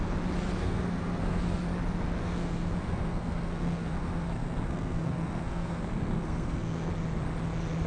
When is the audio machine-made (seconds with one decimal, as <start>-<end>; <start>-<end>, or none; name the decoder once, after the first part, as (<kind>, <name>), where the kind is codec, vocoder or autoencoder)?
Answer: 0.6-1.4 (codec, SNAC); 2.2-6.9

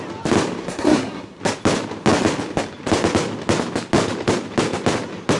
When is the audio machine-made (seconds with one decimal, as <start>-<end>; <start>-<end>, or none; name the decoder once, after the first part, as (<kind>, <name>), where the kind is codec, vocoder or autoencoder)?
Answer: 0.6-1.4 (codec, SNAC)

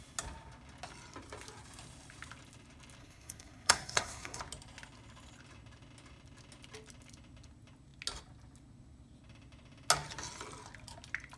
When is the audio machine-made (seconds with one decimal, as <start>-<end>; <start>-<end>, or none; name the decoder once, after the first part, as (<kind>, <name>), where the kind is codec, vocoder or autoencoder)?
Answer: 3.0-4.4 (codec, SNAC)

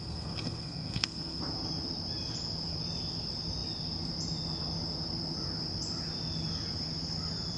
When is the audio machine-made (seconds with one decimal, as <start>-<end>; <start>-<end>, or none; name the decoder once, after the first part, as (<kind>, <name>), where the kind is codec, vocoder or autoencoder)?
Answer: 0.0-1.4 (codec, SNAC)

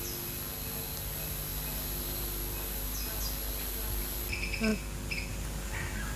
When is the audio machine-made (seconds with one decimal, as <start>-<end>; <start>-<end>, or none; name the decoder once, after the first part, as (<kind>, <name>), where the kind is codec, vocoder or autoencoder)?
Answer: none

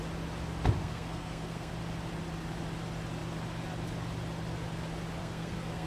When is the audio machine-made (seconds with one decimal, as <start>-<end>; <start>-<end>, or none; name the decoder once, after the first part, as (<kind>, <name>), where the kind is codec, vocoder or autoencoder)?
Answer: 0.8-1.7 (codec, SNAC); 5.2-5.9